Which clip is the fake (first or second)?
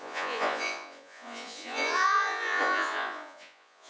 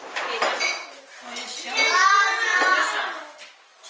first